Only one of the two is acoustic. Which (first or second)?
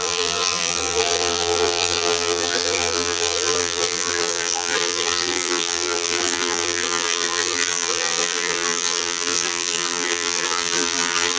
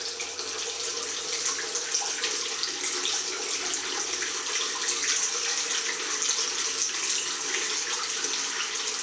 second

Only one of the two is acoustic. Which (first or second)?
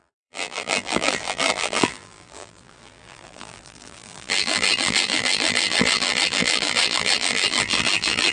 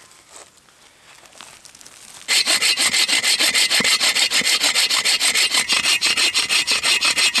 second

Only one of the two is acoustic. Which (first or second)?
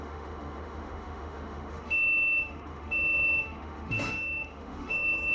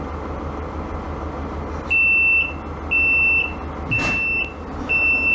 second